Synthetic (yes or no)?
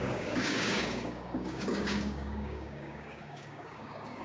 yes